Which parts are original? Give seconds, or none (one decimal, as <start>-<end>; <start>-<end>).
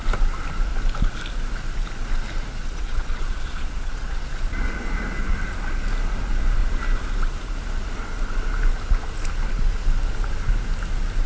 0.0-2.6; 4.3-11.3